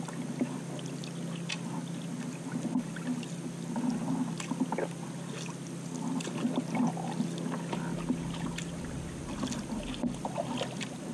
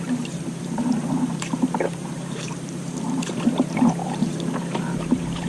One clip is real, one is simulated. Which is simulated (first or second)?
second